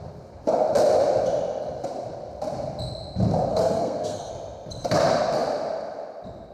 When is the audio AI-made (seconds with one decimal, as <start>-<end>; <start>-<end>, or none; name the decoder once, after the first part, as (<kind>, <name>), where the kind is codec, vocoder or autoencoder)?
3.5-4.3 (codec, SNAC)